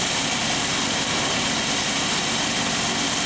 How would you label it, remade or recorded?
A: recorded